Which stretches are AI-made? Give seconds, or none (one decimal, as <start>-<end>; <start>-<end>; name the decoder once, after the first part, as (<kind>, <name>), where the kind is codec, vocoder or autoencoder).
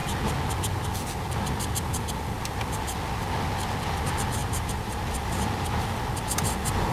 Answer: 4.4-5.0 (vocoder, BigVGAN v2)